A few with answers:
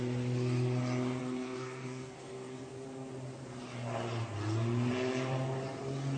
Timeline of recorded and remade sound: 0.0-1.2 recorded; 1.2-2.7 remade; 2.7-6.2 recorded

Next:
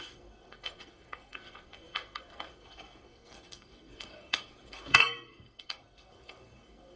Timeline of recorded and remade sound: 0.0-7.0 remade

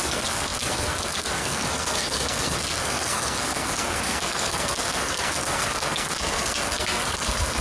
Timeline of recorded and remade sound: 0.0-7.6 remade

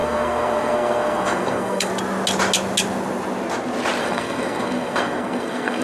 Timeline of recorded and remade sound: 0.0-1.9 remade; 1.9-4.0 recorded; 4.0-5.8 remade

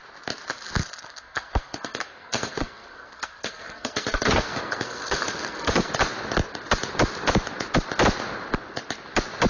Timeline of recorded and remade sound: 0.0-0.8 recorded; 0.8-5.9 remade; 5.9-9.5 recorded

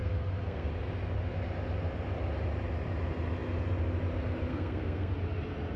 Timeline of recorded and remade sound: 0.0-0.7 remade; 0.7-4.5 recorded; 4.5-5.1 remade; 5.1-5.8 recorded

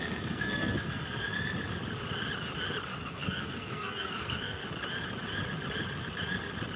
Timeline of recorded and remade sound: 0.0-1.2 remade; 1.2-3.1 recorded; 3.1-4.6 remade; 4.6-6.8 recorded

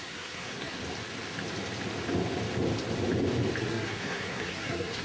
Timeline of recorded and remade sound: 0.0-0.8 remade; 0.8-3.6 recorded; 3.6-5.0 remade